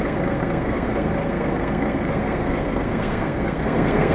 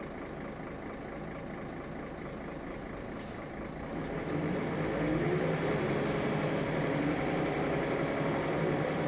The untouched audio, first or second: second